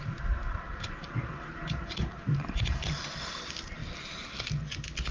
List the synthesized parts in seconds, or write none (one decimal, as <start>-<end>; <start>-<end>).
0.4-3.2; 3.8-4.4